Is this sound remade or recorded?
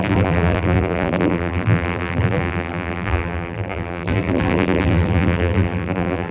remade